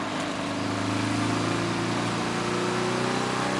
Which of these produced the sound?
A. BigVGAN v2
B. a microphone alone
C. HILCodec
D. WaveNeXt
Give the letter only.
B